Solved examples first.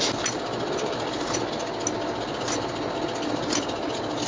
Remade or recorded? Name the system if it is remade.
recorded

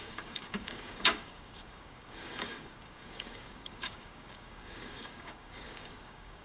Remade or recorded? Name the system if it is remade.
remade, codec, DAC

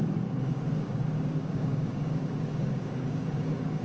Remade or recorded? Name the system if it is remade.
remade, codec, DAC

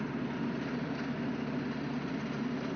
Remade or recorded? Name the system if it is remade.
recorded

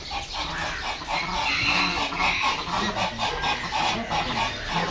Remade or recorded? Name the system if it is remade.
recorded